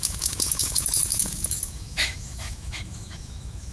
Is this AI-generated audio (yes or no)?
yes